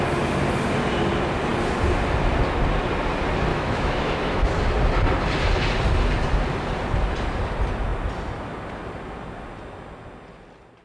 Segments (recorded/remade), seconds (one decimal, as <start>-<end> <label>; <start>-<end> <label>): 0.0-3.5 recorded; 3.5-4.5 remade; 4.5-10.8 recorded